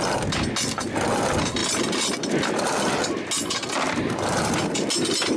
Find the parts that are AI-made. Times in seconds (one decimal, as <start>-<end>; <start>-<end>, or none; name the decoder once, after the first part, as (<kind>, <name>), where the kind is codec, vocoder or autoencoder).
none